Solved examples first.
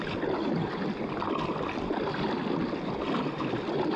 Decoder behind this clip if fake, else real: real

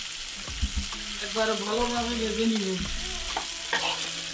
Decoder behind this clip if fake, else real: real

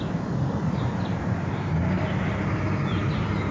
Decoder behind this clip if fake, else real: real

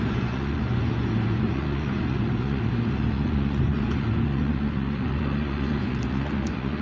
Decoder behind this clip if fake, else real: fake, vocoder, Vocos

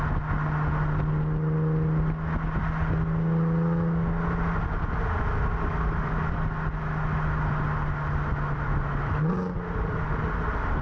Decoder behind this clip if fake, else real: real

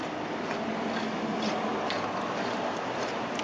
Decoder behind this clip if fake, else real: real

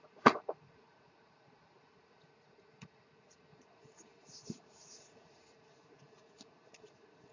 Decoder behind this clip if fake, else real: fake, vocoder, Vocos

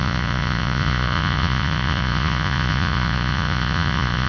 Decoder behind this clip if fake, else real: fake, vocoder, Vocos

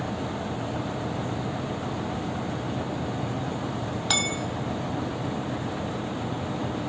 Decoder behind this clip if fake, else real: real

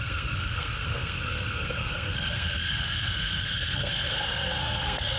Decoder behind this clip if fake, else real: fake, codec, SNAC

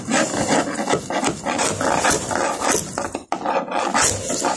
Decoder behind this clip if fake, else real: real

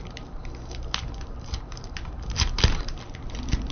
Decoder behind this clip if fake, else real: fake, vocoder, BigVGAN v2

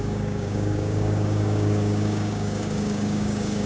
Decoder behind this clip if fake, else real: fake, codec, DAC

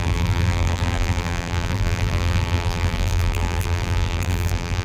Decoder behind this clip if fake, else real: fake, vocoder, BigVGAN v2